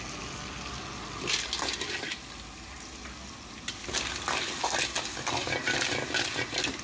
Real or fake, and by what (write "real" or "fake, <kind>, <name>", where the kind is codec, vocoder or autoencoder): real